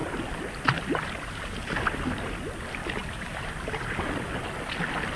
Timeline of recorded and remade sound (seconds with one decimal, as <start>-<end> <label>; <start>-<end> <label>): 0.0-5.2 recorded